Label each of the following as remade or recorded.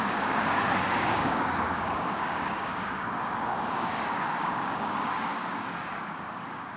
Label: remade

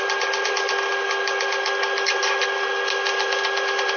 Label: recorded